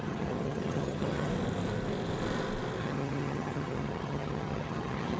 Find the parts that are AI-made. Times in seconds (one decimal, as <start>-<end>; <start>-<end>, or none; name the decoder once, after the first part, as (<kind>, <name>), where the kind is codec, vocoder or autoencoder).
0.0-1.3 (vocoder, HiFi-GAN); 2.8-5.2